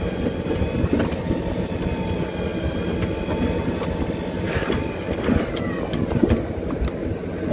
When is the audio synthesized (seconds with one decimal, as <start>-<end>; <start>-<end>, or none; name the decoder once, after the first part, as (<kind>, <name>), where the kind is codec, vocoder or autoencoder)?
none

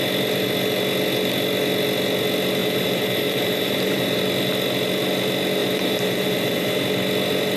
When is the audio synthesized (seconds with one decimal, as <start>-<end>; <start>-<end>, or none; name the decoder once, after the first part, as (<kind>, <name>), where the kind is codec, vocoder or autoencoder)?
2.6-4.2 (vocoder, BigVGAN v2); 5.6-6.7

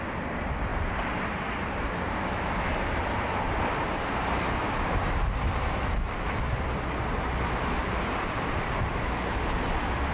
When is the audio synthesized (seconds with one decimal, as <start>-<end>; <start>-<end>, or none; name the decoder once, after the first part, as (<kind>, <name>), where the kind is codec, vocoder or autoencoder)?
none

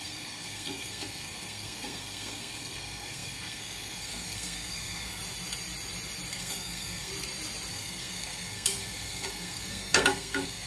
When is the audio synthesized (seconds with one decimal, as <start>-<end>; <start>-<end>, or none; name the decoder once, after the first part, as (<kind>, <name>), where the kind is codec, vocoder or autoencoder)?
0.0-5.2 (codec, SNAC); 6.3-7.1; 7.7-10.7

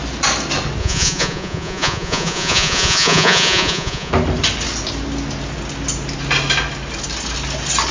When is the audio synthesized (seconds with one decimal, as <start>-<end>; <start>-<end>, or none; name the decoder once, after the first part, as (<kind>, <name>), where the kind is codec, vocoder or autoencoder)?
0.8-4.1 (vocoder, Vocos)

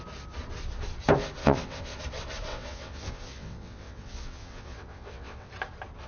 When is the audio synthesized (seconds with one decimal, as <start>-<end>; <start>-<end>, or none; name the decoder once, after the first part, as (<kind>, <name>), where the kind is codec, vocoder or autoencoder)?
1.4-2.0 (vocoder, WaveNeXt); 2.5-5.5

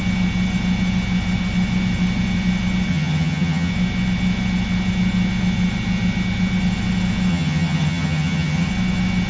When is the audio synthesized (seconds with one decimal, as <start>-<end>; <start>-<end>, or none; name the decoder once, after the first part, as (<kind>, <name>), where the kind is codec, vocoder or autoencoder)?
2.9-3.7 (vocoder, HiFi-GAN); 7.3-8.7